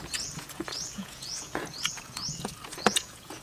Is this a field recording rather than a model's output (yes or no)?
no